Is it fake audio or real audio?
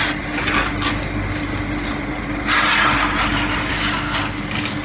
real